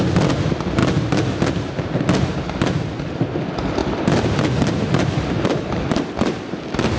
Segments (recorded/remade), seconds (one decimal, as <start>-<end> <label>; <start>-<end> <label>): 0.0-3.8 recorded; 3.8-6.6 remade; 6.6-7.0 recorded